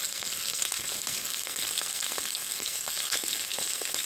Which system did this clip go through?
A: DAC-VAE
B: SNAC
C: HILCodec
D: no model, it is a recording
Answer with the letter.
B